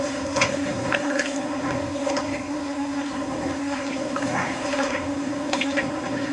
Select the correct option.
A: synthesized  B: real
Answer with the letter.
A